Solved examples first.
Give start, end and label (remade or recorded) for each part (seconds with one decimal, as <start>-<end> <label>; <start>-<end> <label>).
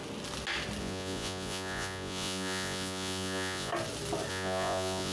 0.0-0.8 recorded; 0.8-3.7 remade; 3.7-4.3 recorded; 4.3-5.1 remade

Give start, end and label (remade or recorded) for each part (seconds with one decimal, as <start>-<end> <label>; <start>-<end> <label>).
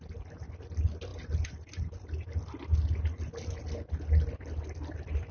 0.0-5.3 recorded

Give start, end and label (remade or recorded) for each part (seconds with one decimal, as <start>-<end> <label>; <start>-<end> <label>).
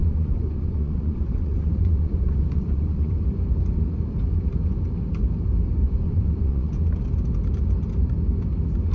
0.0-3.1 remade; 3.1-5.8 recorded; 5.8-6.8 remade; 6.8-8.9 recorded